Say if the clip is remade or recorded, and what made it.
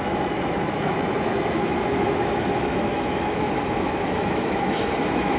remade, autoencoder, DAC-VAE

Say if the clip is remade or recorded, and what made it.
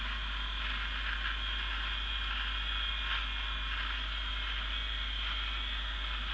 recorded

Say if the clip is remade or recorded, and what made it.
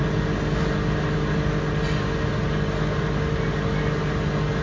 recorded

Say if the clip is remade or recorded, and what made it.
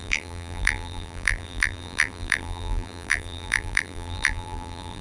remade, vocoder, BigVGAN v2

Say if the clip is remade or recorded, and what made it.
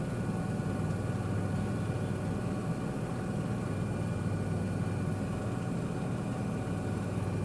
recorded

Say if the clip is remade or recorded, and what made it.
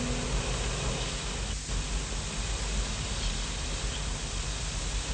recorded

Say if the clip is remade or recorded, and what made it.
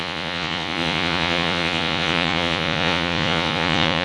remade, vocoder, Vocos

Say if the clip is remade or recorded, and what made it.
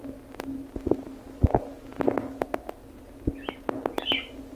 recorded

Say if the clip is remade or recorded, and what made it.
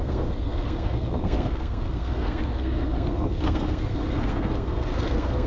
remade, codec, SNAC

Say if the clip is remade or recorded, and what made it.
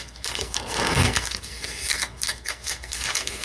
remade, codec, SNAC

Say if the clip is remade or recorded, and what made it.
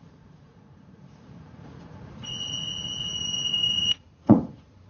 remade, vocoder, Vocos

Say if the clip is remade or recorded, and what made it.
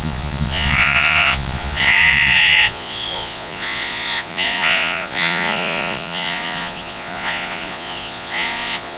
remade, vocoder, Vocos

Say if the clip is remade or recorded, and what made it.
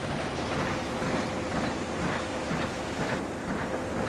recorded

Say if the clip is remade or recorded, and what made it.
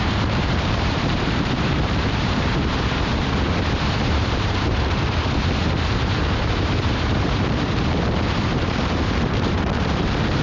remade, vocoder, BigVGAN v2